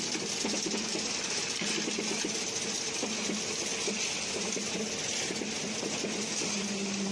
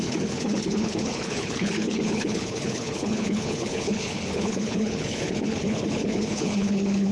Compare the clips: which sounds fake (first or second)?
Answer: second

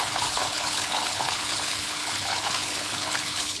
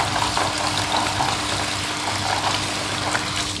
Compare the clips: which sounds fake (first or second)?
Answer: first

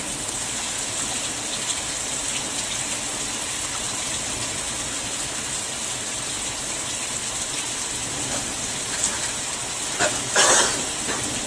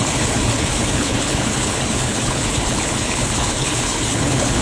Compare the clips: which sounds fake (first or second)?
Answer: second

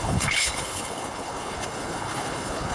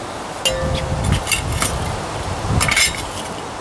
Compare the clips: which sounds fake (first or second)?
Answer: first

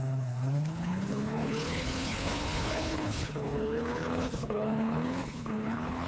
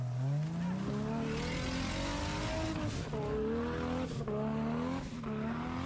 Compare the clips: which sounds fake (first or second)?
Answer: first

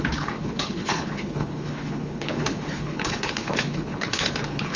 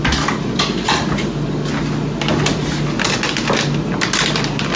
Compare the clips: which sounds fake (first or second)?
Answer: first